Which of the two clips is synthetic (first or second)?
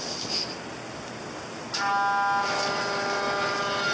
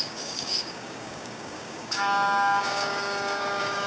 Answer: second